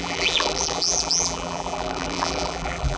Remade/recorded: remade